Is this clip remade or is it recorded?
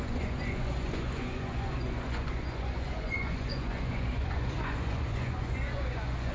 remade